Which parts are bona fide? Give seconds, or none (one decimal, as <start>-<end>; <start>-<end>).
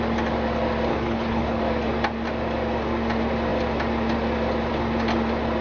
0.0-0.9; 1.6-5.6